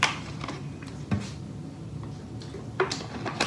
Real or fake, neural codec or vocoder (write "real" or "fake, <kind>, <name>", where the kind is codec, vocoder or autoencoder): real